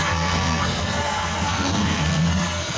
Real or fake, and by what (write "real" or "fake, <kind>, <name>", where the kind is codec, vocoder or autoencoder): fake, codec, SNAC